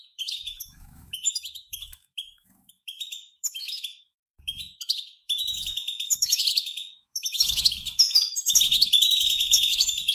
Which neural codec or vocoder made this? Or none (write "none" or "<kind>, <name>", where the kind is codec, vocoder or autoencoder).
autoencoder, DAC-VAE